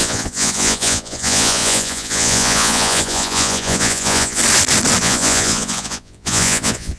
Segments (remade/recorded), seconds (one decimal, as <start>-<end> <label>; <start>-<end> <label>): 0.0-4.4 remade; 4.4-5.0 recorded; 5.0-7.0 remade